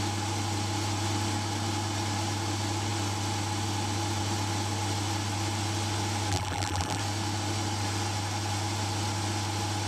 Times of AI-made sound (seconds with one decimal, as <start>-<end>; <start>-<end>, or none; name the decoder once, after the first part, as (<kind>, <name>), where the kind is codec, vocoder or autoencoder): 6.3-7.0 (vocoder, BigVGAN v2)